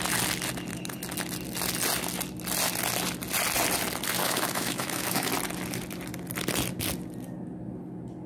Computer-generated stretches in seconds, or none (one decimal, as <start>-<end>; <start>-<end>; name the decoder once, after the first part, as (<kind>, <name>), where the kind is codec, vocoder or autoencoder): 4.2-5.3 (autoencoder, DAC-VAE)